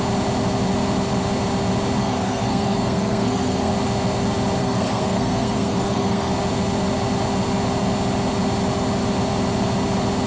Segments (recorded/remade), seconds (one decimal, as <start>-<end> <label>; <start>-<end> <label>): 0.0-2.0 recorded; 2.0-3.7 remade; 3.7-4.6 recorded; 4.6-6.3 remade; 6.3-10.3 recorded